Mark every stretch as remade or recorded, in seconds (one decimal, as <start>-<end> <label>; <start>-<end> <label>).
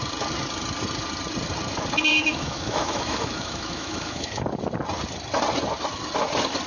0.0-2.1 recorded; 2.1-4.4 remade; 4.4-6.7 recorded